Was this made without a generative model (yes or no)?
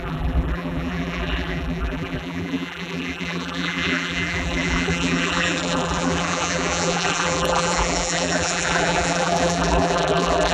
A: no